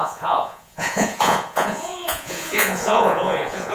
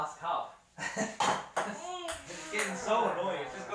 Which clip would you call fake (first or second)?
first